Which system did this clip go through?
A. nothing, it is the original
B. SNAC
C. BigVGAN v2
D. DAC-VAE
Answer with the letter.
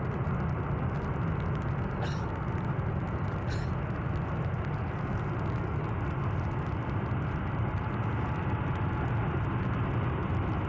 A